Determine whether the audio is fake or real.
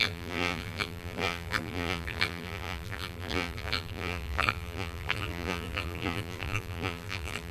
fake